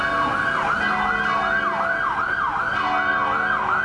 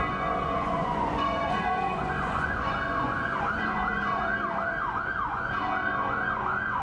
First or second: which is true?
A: first